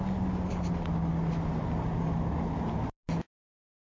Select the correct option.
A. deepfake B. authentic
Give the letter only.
B